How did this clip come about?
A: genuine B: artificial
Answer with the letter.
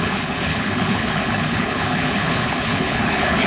B